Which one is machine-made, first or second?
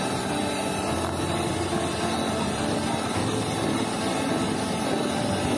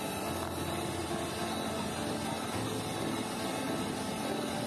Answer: first